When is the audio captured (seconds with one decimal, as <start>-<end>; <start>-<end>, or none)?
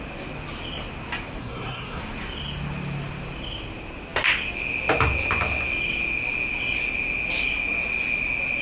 0.0-1.4; 2.0-8.6